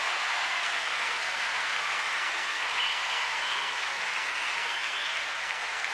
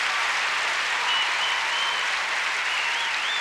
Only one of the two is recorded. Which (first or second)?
second